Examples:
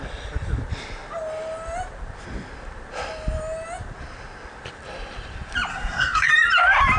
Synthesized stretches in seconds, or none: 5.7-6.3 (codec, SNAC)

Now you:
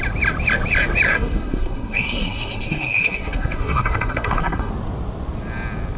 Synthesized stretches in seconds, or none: 1.1-4.7 (codec, SNAC)

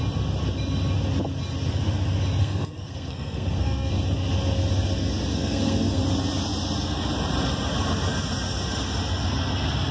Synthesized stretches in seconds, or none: 2.4-3.9 (codec, SNAC); 5.3-6.0

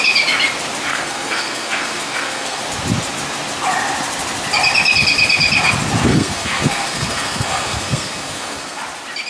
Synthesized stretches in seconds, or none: 0.9-2.6 (codec, SNAC); 6.1-8.8

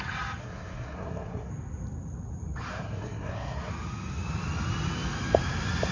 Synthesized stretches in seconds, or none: 0.4-1.5 (codec, SNAC); 2.7-3.7